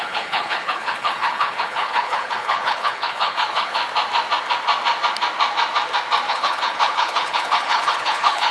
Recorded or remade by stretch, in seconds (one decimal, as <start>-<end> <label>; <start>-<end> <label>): 0.0-3.8 remade; 3.8-6.3 recorded; 6.3-8.5 remade